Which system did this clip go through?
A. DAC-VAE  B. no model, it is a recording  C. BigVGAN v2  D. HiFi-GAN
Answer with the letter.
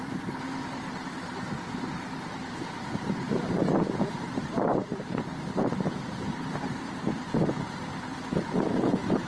C